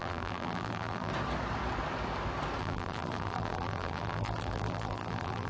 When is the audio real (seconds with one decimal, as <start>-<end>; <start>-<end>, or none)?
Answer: 1.1-2.6